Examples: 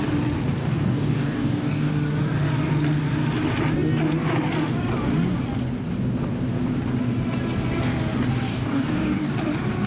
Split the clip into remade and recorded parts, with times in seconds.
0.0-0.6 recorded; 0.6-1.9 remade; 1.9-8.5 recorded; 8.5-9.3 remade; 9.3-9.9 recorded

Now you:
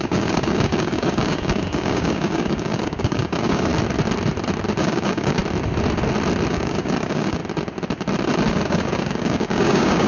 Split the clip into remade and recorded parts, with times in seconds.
0.0-3.7 remade; 3.7-4.8 recorded; 4.8-5.4 remade; 5.4-6.5 recorded; 6.5-7.4 remade; 7.4-8.5 recorded; 8.5-10.1 remade

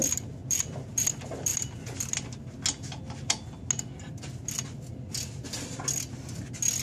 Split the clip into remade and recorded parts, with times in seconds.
0.0-6.8 recorded